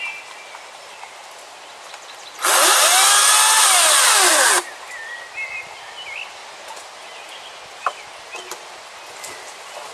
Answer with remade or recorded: recorded